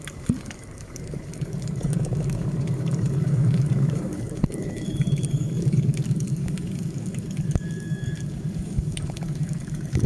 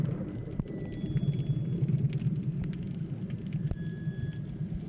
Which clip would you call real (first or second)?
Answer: second